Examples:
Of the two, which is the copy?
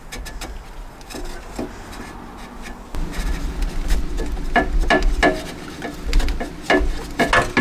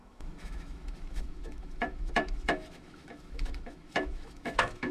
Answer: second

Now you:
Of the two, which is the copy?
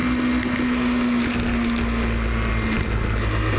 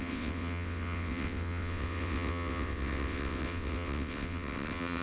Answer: second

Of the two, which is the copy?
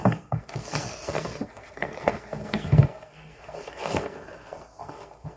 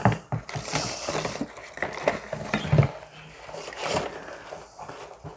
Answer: first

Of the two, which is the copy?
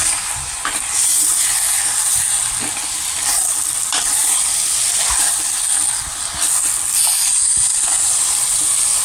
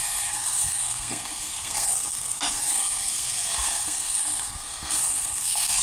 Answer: second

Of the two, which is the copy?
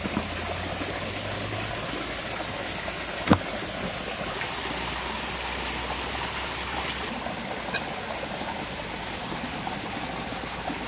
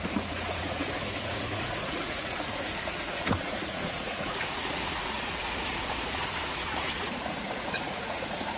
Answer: second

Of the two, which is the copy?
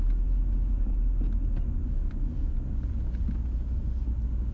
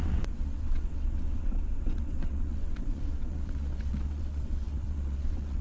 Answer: second